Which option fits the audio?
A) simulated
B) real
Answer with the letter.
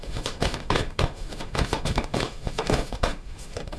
A